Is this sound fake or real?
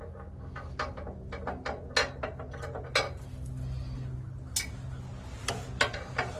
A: real